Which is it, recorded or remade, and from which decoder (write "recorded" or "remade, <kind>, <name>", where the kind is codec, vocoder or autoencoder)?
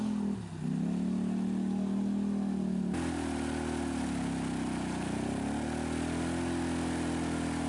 recorded